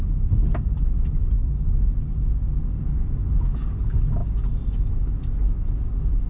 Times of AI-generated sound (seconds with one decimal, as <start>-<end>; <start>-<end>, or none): none